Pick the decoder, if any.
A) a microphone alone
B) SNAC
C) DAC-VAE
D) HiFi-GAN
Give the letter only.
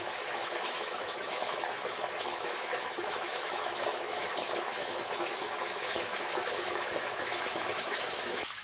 C